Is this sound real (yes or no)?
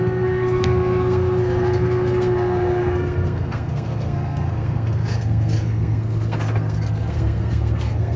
no